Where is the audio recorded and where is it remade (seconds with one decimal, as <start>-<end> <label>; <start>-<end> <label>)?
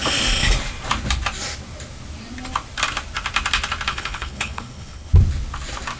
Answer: 0.0-3.9 recorded; 3.9-5.1 remade; 5.1-6.0 recorded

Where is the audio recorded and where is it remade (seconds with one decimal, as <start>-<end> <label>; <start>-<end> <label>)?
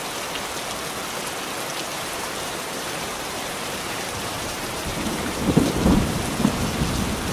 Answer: 0.0-1.9 recorded; 1.9-6.2 remade; 6.2-7.3 recorded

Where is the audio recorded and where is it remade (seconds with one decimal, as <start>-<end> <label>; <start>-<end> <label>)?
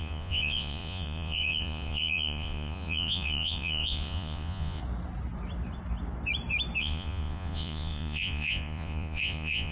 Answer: 0.0-4.8 remade; 4.8-6.8 recorded; 6.8-9.7 remade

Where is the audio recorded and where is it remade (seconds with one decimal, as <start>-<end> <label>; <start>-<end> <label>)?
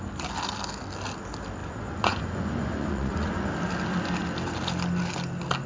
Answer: 0.0-1.6 recorded; 1.6-3.5 remade; 3.5-5.7 recorded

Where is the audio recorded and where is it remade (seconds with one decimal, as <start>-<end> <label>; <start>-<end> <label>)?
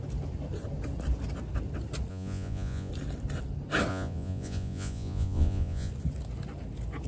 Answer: 0.0-2.1 recorded; 2.1-2.9 remade; 2.9-3.9 recorded; 3.9-5.9 remade; 5.9-7.1 recorded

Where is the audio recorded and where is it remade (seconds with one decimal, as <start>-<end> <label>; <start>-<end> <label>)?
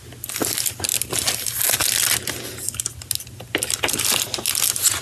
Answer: 0.0-5.0 recorded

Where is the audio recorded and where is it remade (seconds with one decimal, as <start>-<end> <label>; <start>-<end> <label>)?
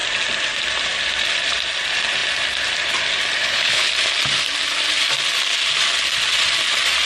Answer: 0.0-3.4 recorded; 3.4-3.9 remade; 3.9-7.1 recorded